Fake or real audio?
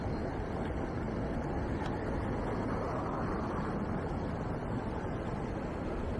real